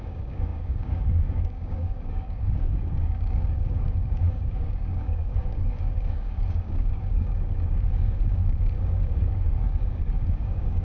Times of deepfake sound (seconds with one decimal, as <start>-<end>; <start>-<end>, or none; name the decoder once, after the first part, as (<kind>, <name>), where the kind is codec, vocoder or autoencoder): 0.0-10.8 (codec, DAC)